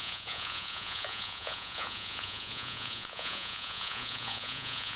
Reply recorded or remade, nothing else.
remade